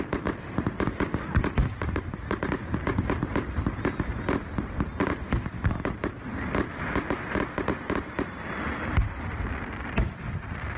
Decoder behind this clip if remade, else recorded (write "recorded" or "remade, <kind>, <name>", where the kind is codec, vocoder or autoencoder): recorded